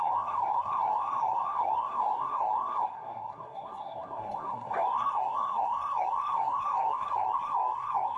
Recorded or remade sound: remade